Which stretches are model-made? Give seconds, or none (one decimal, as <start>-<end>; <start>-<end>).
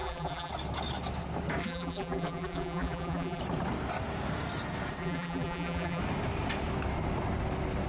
0.0-0.5; 1.6-3.4; 5.0-6.0